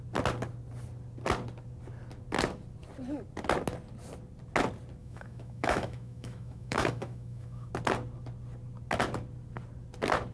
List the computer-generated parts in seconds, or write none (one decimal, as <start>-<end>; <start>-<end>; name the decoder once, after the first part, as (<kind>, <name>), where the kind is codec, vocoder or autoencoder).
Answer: 5.0-7.7 (autoencoder, DAC-VAE)